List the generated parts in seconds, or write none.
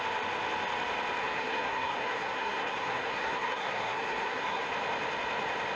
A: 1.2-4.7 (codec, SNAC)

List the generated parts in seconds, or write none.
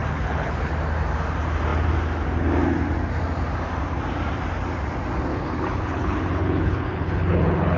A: 0.0-0.7 (codec, HILCodec); 5.3-7.8